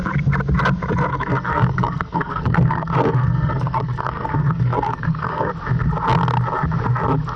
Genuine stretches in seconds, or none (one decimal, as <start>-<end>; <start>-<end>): 0.0-1.1; 5.5-7.4